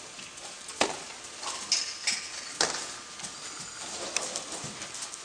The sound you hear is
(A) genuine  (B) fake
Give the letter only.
A